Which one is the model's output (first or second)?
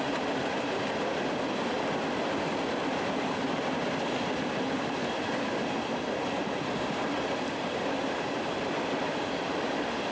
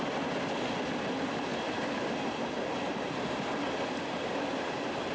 first